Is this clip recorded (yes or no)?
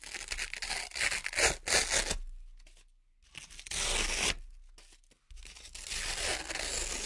yes